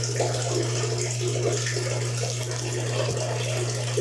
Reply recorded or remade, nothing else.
recorded